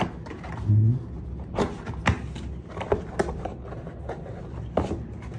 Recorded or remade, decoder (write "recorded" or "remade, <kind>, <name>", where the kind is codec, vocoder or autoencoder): recorded